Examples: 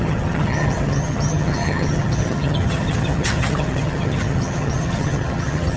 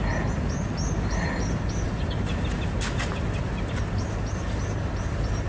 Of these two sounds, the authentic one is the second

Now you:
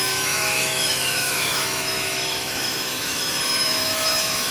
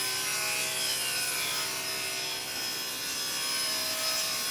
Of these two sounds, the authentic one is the second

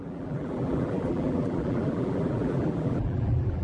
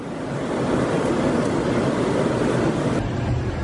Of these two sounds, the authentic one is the second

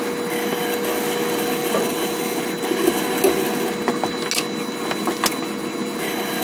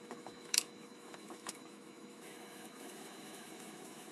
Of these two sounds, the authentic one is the first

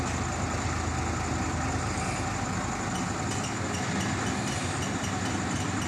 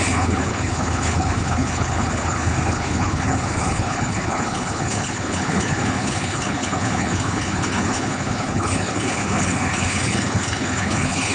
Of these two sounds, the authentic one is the first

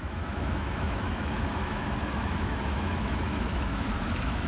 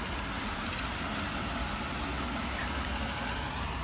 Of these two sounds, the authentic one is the second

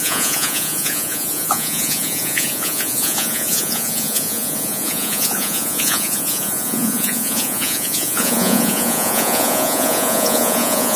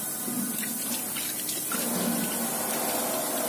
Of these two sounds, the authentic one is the second